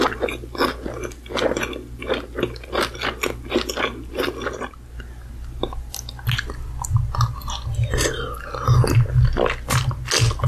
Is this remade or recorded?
recorded